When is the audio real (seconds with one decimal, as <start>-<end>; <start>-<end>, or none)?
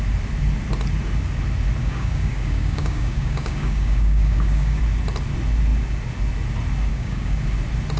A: 0.0-1.8; 4.8-6.9; 7.4-8.0